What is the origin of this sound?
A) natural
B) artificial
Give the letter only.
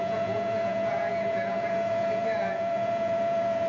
B